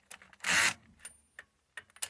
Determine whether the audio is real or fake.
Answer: real